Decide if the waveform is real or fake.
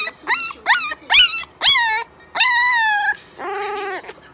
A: real